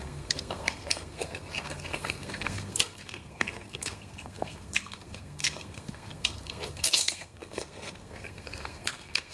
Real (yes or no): no